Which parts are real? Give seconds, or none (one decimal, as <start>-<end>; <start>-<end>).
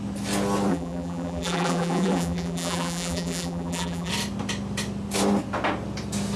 0.0-0.7; 4.1-6.4